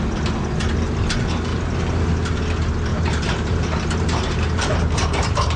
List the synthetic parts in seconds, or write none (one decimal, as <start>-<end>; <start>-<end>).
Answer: 2.9-5.6